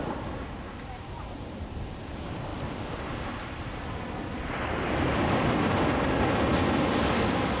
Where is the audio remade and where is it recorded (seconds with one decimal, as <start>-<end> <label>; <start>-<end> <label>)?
0.0-7.6 recorded